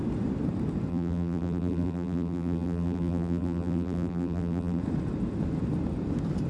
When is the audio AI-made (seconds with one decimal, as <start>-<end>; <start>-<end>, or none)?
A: 0.9-4.8